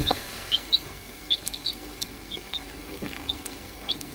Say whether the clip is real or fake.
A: fake